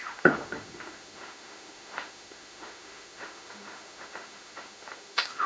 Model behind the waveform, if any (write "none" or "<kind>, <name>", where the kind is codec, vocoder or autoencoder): autoencoder, DAC-VAE